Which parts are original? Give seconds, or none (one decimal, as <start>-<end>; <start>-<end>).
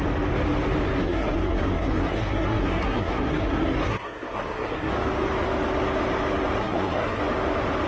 0.0-1.0; 4.9-6.6; 7.2-7.9